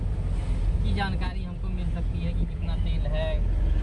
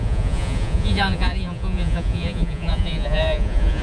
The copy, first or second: second